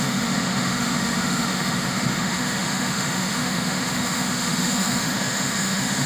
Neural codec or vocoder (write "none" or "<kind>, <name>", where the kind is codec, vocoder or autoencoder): autoencoder, DAC-VAE